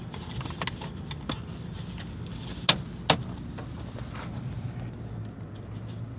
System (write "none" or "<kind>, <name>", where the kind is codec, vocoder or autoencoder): none